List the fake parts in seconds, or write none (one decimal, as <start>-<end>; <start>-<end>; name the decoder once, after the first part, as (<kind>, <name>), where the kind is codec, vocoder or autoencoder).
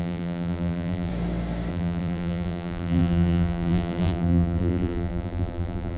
0.0-1.1 (vocoder, BigVGAN v2); 1.7-6.0